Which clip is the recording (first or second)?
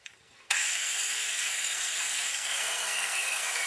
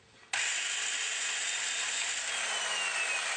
second